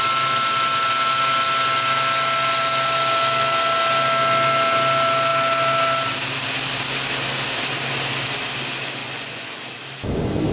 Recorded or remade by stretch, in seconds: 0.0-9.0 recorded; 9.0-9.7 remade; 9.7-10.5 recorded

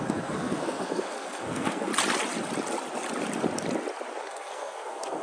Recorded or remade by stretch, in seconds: 0.0-1.9 remade; 1.9-4.2 recorded; 4.2-5.2 remade

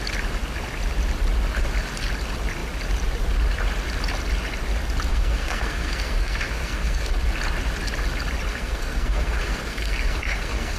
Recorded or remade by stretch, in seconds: 0.0-5.1 recorded; 5.1-7.1 remade; 7.1-8.5 recorded; 8.5-10.8 remade